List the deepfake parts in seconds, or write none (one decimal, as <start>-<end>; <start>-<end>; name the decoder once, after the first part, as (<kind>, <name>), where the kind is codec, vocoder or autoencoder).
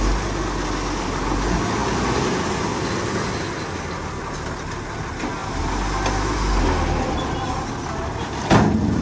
1.8-3.3 (vocoder, BigVGAN v2)